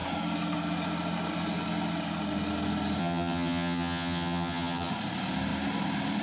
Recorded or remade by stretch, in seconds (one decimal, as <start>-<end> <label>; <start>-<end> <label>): 0.0-3.0 recorded; 3.0-4.9 remade; 4.9-6.2 recorded